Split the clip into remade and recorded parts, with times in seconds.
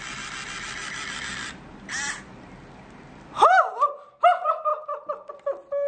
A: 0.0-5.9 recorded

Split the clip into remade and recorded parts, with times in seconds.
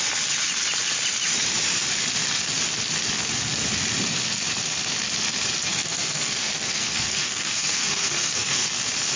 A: 0.0-5.7 recorded; 5.7-8.7 remade; 8.7-9.2 recorded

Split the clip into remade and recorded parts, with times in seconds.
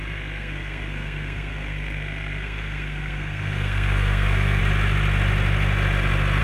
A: 0.0-4.6 remade; 4.6-6.4 recorded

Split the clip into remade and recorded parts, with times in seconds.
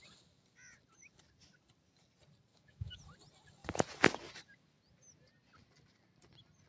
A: 0.0-2.5 recorded; 2.5-3.0 remade; 3.0-6.7 recorded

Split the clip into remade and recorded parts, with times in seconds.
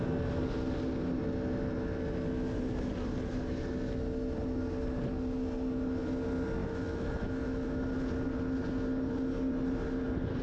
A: 0.0-6.6 recorded; 6.6-7.8 remade; 7.8-10.4 recorded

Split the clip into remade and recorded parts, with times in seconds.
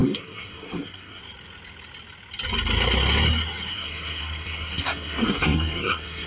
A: 0.0-1.2 remade; 1.2-3.7 recorded; 3.7-6.3 remade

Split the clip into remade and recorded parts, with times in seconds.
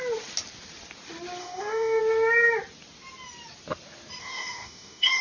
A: 0.0-1.4 recorded; 1.4-2.0 remade; 2.0-4.2 recorded; 4.2-5.2 remade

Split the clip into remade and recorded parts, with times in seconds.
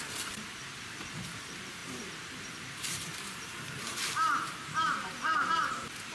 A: 0.0-6.1 remade